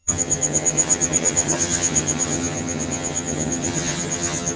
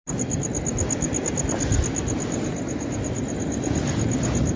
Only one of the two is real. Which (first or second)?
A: second